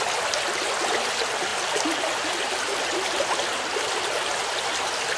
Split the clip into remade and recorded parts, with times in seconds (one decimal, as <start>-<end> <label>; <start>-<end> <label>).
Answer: 0.0-5.2 recorded